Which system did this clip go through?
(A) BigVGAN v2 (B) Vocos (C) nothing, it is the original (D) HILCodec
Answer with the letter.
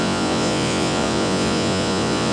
B